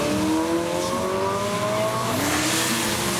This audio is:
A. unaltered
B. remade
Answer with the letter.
A